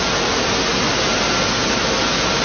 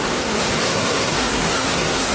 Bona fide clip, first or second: first